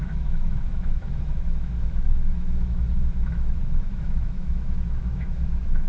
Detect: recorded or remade remade